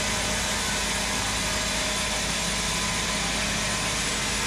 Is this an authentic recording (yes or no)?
yes